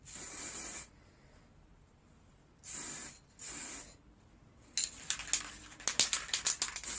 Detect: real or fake real